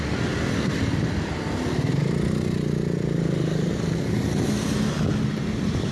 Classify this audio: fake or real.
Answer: real